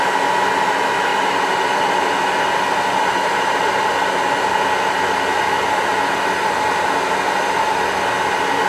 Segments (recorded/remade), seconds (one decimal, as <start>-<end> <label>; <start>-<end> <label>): 0.0-1.1 recorded; 1.1-1.8 remade; 1.8-8.7 recorded